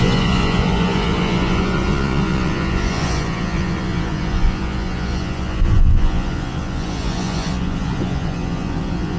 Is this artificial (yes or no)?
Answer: yes